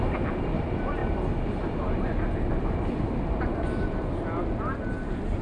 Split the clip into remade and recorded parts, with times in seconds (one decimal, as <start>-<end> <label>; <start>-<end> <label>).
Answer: 0.0-5.4 recorded

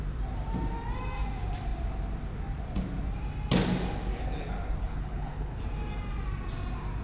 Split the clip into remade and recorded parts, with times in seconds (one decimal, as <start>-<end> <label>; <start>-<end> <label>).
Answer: 0.0-4.8 recorded; 4.8-5.6 remade; 5.6-7.0 recorded

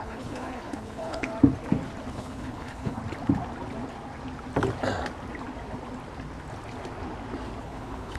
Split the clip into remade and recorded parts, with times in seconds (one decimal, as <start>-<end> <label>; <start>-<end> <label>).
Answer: 0.0-1.3 remade; 1.3-2.1 recorded; 2.1-3.0 remade; 3.0-7.6 recorded; 7.6-8.2 remade